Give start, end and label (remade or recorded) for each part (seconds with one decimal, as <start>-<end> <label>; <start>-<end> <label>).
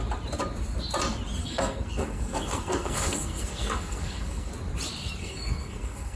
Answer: 0.0-1.4 recorded; 1.4-4.5 remade; 4.5-5.2 recorded; 5.2-6.2 remade